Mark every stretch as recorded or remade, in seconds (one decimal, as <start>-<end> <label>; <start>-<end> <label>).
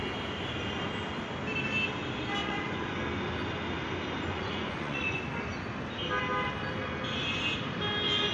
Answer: 0.0-2.4 recorded; 2.4-3.0 remade; 3.0-4.3 recorded; 4.3-5.2 remade; 5.2-8.3 recorded